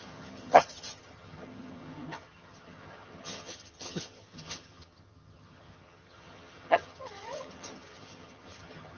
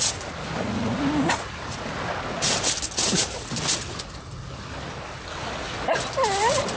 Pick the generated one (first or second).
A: first